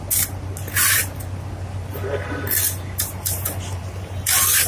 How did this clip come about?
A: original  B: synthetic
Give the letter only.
A